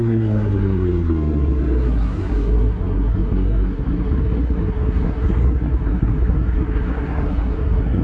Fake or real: fake